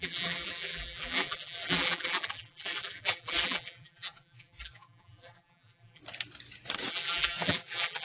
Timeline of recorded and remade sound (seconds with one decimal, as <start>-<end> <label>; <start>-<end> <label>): 0.0-6.0 remade; 6.0-6.9 recorded; 6.9-8.0 remade